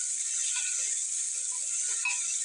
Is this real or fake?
real